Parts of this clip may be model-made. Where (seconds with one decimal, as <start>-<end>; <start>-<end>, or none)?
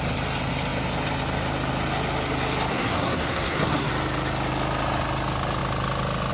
2.7-3.9